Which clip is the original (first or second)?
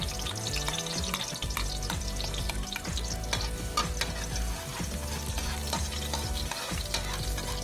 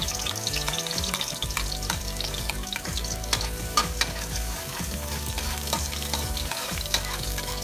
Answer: first